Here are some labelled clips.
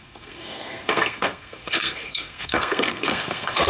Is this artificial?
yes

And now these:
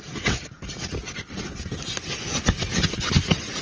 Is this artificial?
no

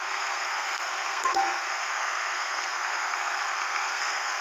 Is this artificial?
yes